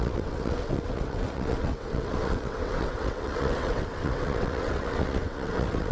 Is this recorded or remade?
remade